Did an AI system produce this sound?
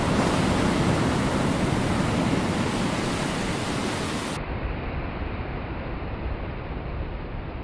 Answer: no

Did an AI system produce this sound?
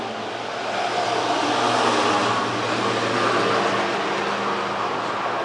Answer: no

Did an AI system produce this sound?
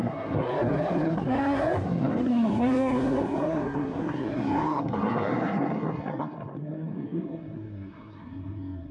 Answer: yes